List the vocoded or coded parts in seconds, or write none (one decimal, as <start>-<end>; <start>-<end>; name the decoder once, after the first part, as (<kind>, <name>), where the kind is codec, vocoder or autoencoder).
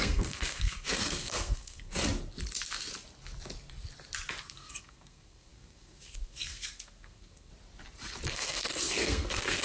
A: 0.0-2.0 (codec, SNAC); 4.4-7.5; 8.3-9.6